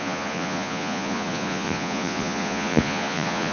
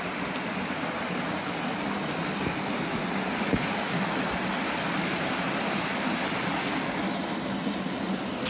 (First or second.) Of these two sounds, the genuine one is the second